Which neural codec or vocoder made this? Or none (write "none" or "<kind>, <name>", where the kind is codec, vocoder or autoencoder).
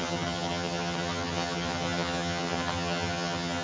vocoder, HiFi-GAN